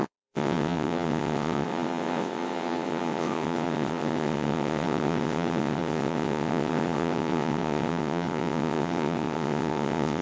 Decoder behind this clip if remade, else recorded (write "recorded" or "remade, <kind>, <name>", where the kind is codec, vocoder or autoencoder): remade, vocoder, WaveNeXt